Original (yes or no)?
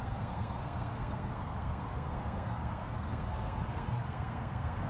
no